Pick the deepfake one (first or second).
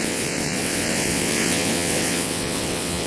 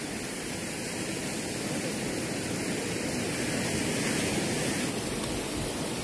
first